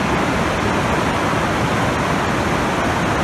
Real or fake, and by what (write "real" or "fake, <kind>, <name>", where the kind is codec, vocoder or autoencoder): real